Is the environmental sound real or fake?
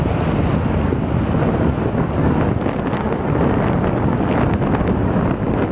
real